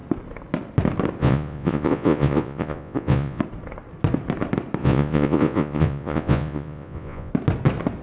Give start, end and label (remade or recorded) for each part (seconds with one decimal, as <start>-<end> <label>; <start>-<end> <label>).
0.0-1.2 recorded; 1.2-3.4 remade; 3.4-4.8 recorded; 4.8-7.3 remade; 7.3-8.0 recorded